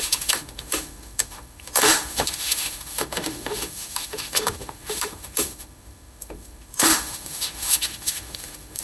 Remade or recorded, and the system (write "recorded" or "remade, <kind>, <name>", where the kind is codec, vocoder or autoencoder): remade, autoencoder, DAC-VAE